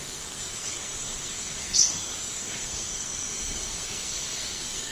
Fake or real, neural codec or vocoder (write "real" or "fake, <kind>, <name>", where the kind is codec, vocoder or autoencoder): fake, codec, SNAC